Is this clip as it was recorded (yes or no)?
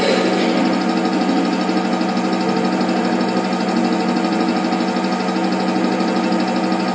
yes